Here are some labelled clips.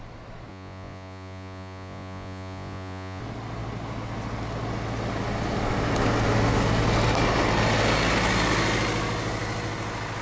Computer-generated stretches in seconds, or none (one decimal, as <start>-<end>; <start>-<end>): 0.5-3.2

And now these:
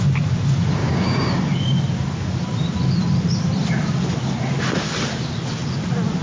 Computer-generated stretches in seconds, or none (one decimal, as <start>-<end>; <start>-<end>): 0.8-1.4

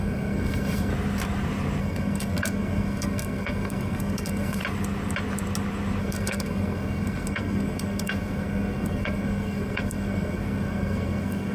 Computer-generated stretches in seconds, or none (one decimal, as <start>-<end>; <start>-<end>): 0.0-0.9; 1.8-4.6; 6.0-11.5

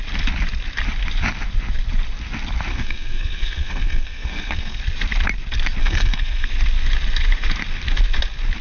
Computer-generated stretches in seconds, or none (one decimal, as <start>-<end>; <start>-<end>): 2.7-4.8; 5.8-6.5

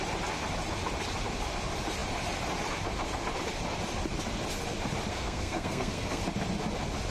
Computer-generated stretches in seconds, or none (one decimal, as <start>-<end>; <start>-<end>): 5.1-6.2